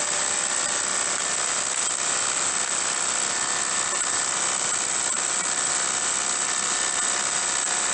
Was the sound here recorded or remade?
recorded